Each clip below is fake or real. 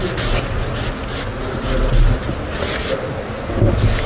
real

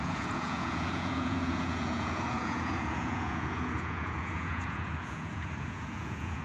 fake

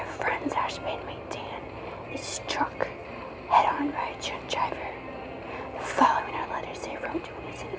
real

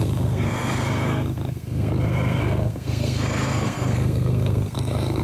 fake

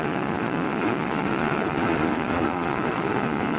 fake